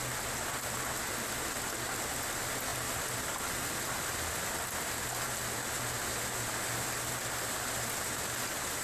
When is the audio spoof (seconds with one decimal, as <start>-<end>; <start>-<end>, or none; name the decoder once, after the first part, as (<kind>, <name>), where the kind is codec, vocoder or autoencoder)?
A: none